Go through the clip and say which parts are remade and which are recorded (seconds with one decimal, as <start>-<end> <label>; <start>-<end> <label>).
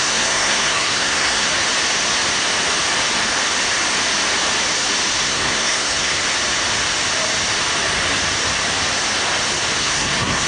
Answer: 0.0-1.5 remade; 1.5-5.2 recorded; 5.2-6.2 remade; 6.2-9.8 recorded; 9.8-10.5 remade